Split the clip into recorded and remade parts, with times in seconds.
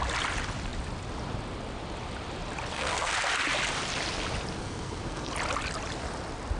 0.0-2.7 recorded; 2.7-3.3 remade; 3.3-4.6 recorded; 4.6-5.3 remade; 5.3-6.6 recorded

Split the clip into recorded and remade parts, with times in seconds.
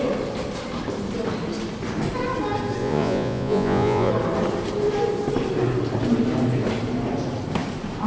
0.0-2.8 recorded; 2.8-4.1 remade; 4.1-8.1 recorded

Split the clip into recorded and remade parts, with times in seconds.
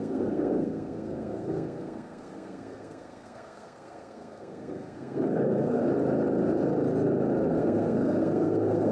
0.0-5.8 remade; 5.8-7.5 recorded; 7.5-8.9 remade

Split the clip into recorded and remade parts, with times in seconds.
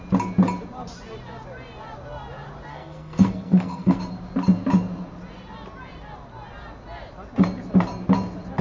0.0-2.7 recorded; 2.7-4.0 remade; 4.0-8.6 recorded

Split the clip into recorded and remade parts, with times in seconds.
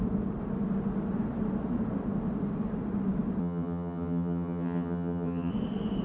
0.0-3.4 recorded; 3.4-5.5 remade; 5.5-6.0 recorded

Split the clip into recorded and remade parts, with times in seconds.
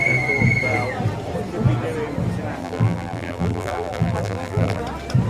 0.0-2.6 recorded; 2.6-4.8 remade; 4.8-5.3 recorded